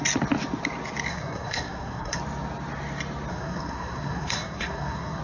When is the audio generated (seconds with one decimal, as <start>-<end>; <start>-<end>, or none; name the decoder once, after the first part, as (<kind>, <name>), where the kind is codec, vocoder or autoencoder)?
1.1-2.2 (codec, SNAC); 3.3-5.2